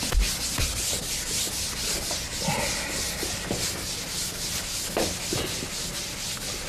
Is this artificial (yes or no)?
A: no